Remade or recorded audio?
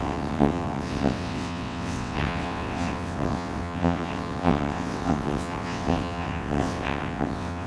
remade